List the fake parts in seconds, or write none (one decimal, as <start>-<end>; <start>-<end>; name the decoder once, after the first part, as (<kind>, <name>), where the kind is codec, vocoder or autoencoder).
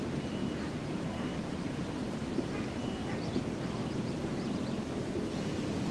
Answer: 0.0-5.9 (vocoder, BigVGAN v2)